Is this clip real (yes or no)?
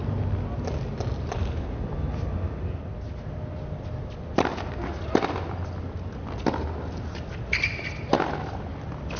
yes